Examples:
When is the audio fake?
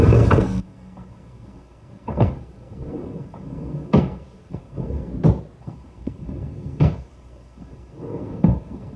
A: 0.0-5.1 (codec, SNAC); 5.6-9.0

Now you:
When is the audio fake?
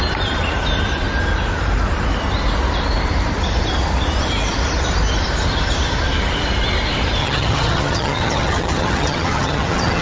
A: 7.2-10.0 (vocoder, HiFi-GAN)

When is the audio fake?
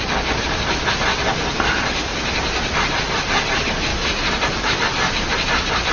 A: 2.1-2.9 (vocoder, BigVGAN v2); 3.9-4.8